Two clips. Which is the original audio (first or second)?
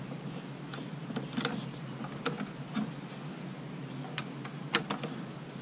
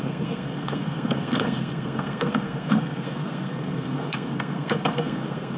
first